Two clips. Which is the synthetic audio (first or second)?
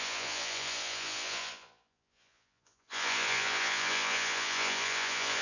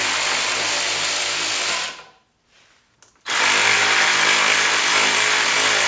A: first